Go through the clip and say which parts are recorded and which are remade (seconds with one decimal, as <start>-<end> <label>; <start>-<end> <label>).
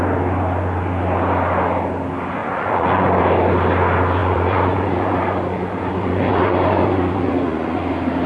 0.0-2.4 recorded; 2.4-3.2 remade; 3.2-4.2 recorded; 4.2-7.9 remade; 7.9-8.3 recorded